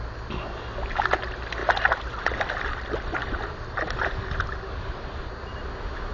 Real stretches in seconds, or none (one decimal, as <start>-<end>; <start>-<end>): 0.0-1.6; 5.3-6.1